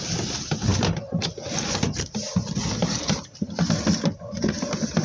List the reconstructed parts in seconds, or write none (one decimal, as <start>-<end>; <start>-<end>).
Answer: none